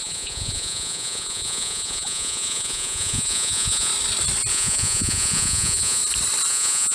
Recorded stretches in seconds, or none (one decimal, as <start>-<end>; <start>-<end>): 3.9-4.5; 6.0-6.5